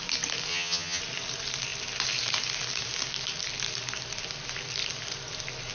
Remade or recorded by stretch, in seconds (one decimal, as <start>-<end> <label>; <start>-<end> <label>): 0.0-0.5 recorded; 0.5-1.0 remade; 1.0-5.7 recorded